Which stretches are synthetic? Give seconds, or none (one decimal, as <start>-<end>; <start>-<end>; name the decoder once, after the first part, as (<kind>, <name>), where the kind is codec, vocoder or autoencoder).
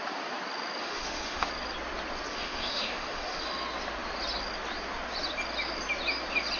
0.8-1.5 (autoencoder, DAC-VAE); 2.3-3.4